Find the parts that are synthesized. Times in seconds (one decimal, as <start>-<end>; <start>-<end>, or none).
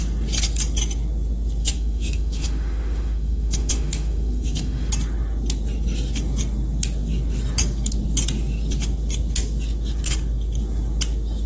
1.6-4.9